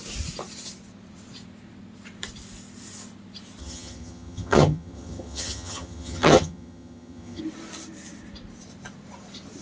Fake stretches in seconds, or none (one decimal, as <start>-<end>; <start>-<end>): 3.6-7.4